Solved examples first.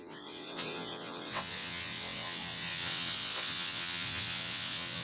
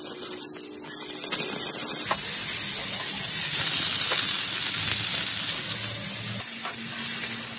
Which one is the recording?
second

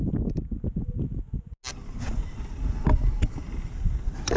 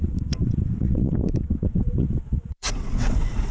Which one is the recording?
first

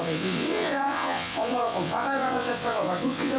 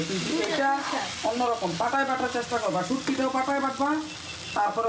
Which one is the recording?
second